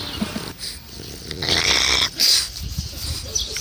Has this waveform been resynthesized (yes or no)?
no